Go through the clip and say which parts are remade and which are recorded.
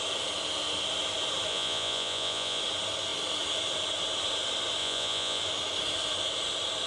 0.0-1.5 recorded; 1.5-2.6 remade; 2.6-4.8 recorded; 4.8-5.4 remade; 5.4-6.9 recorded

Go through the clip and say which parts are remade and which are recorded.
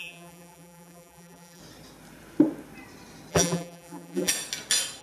0.0-1.6 remade; 1.6-3.3 recorded; 3.3-4.3 remade; 4.3-5.0 recorded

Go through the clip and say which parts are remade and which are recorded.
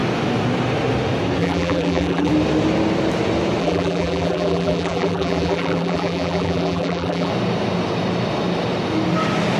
0.0-1.4 recorded; 1.4-2.3 remade; 2.3-3.6 recorded; 3.6-7.3 remade; 7.3-9.6 recorded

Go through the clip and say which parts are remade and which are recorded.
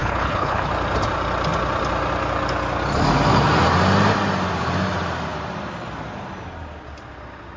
0.0-0.7 remade; 0.7-7.6 recorded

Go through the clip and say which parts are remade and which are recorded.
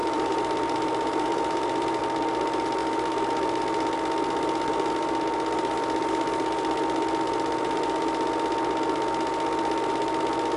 0.0-2.0 remade; 2.0-10.6 recorded